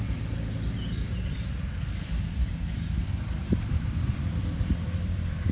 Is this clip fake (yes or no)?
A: yes